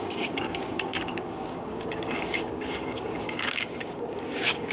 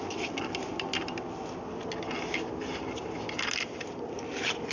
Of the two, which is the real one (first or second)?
second